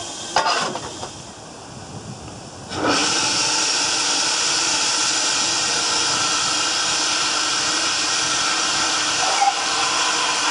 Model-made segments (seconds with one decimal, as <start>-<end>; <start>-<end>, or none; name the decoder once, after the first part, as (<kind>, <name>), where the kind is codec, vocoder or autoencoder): none

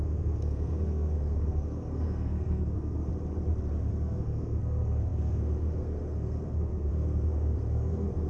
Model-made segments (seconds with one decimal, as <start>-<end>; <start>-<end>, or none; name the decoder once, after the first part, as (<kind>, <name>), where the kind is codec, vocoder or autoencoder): 0.0-3.1 (codec, SNAC); 3.9-8.3

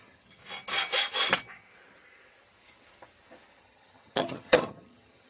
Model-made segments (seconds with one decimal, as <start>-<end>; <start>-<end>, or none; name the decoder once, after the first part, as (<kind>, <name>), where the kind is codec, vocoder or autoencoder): 0.0-0.4 (vocoder, HiFi-GAN); 3.6-5.3

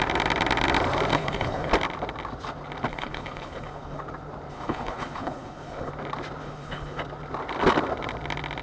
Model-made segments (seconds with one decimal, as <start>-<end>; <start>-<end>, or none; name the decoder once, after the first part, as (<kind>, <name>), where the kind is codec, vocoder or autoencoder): 1.1-1.7 (codec, HILCodec); 2.9-4.0; 4.5-5.9; 6.4-7.0

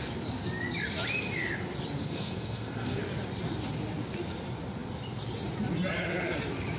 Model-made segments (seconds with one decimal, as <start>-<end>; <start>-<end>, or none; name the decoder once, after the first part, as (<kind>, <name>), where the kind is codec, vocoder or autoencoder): 2.0-3.0 (codec, SNAC)

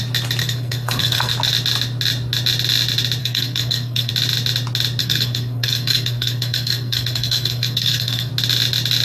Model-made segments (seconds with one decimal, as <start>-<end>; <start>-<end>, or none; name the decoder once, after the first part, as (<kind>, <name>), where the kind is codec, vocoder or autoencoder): 0.4-1.3 (codec, SNAC); 3.2-4.1; 5.0-8.3

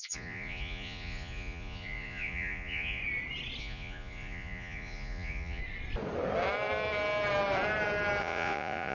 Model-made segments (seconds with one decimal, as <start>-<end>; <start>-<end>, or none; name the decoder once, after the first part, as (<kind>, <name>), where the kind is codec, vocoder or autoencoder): 0.0-3.0 (vocoder, Vocos); 3.6-5.6; 8.2-8.9